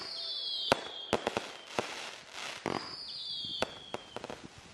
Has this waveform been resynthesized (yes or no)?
no